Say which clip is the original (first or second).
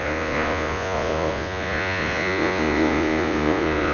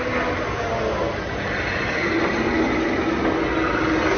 second